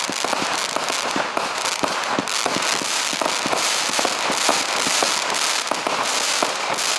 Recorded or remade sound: recorded